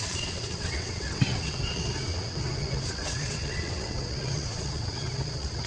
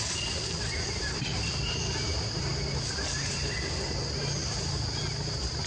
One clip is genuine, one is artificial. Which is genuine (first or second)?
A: second